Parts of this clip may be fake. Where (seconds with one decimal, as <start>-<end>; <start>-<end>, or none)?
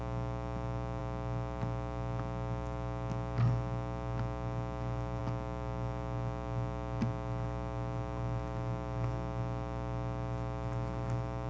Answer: none